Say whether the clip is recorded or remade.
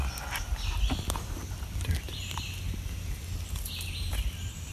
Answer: recorded